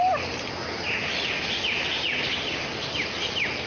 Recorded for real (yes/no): yes